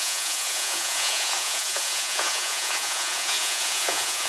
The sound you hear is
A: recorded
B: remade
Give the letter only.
B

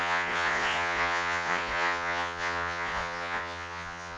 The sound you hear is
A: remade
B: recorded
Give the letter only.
A